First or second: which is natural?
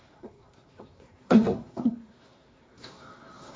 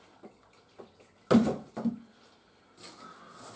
second